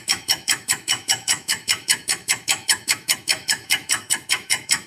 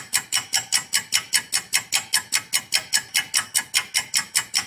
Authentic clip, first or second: second